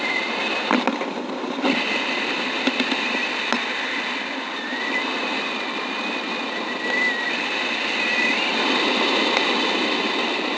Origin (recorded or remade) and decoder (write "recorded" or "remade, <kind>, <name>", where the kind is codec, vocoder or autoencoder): recorded